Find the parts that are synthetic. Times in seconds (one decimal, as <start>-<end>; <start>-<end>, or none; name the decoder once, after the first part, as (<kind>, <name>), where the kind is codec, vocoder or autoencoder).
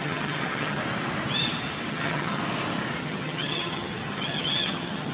0.0-0.8 (vocoder, HiFi-GAN); 1.9-2.4; 3.0-5.1